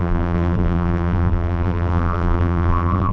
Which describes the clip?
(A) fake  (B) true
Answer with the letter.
A